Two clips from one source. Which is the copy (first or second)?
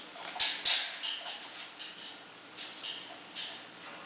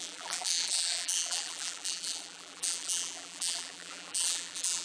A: second